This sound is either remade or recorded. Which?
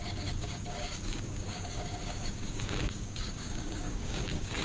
remade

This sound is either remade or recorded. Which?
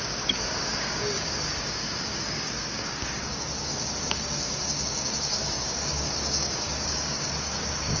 remade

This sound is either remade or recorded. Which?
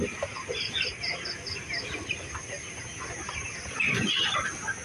recorded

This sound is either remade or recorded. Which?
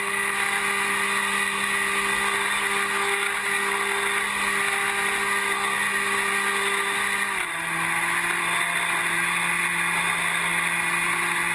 recorded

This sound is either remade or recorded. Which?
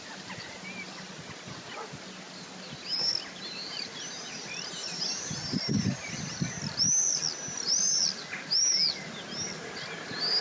recorded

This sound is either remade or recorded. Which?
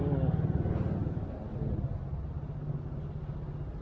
recorded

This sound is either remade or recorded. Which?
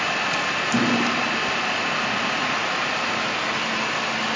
recorded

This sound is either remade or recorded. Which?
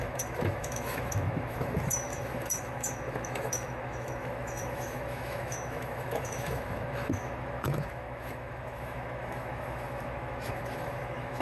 remade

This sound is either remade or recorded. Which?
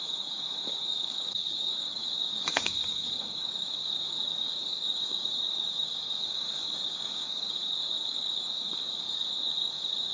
remade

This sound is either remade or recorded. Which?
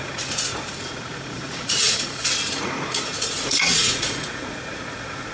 remade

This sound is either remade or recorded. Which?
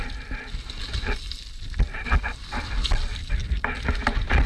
recorded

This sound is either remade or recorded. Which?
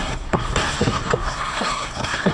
remade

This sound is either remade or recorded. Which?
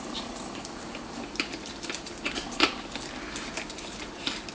recorded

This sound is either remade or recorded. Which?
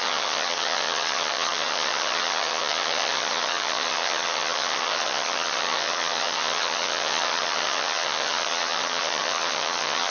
remade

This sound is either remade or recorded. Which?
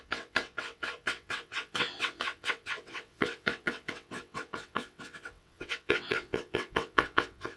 remade